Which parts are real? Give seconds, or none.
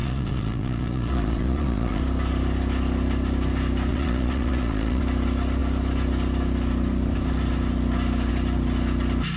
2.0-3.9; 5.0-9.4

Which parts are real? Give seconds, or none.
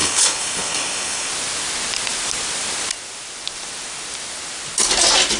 1.3-5.4